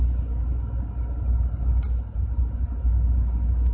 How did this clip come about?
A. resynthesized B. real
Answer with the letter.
B